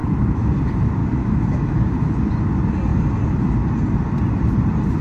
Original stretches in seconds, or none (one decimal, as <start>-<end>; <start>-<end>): 0.5-1.0; 2.2-5.0